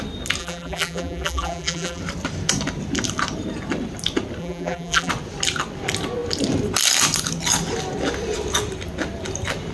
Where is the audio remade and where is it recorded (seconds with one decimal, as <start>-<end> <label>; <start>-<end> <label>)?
0.0-0.4 recorded; 0.4-2.0 remade; 2.0-4.4 recorded; 4.4-5.1 remade; 5.1-9.7 recorded